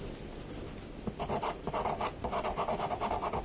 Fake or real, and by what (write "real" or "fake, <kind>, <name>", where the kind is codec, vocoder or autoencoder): real